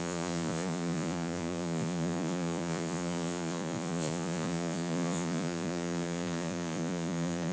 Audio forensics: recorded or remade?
remade